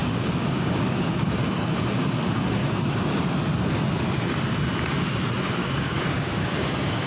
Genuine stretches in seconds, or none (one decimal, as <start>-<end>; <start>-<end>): 1.4-2.6; 3.2-5.6